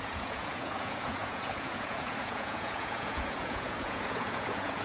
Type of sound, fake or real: fake